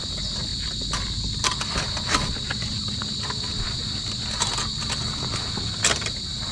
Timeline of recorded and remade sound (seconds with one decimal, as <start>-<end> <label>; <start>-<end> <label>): 0.0-6.5 recorded